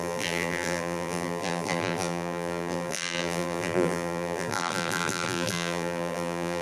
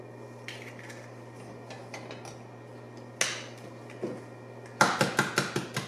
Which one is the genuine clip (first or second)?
second